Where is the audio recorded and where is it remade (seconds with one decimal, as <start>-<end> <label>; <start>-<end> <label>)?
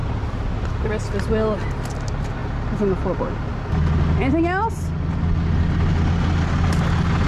0.0-7.3 recorded